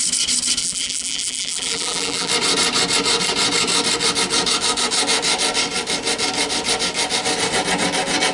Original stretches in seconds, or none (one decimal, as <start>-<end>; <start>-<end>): 0.0-0.6; 2.3-8.3